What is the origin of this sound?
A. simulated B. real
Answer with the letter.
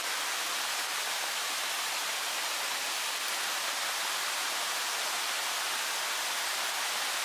B